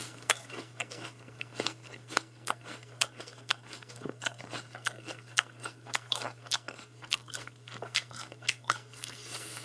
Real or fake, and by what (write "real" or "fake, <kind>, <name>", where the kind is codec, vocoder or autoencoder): fake, codec, SNAC